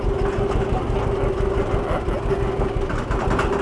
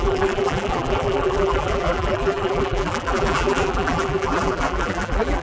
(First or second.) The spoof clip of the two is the second